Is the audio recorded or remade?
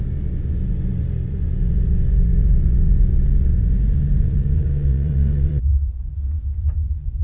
remade